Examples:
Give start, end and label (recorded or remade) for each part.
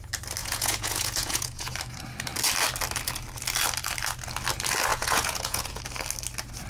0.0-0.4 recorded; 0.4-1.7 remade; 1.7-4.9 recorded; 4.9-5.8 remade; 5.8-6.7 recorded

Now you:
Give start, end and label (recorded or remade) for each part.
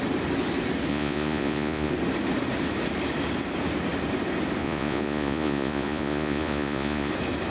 0.0-0.9 recorded; 0.9-1.9 remade; 1.9-4.6 recorded; 4.6-7.1 remade; 7.1-7.5 recorded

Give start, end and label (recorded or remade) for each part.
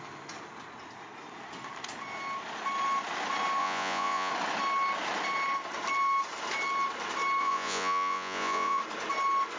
0.0-3.6 recorded; 3.6-4.3 remade; 4.3-7.4 recorded; 7.4-8.8 remade; 8.8-9.6 recorded